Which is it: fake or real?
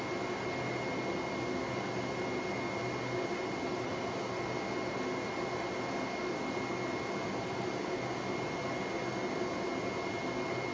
real